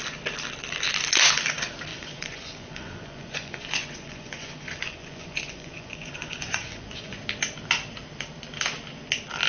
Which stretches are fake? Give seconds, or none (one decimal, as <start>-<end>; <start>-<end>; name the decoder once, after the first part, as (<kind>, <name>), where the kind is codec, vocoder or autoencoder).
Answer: 1.9-7.2 (vocoder, Vocos)